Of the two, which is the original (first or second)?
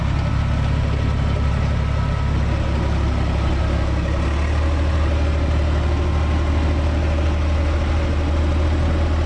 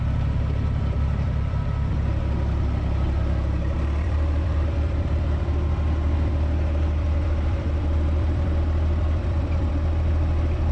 first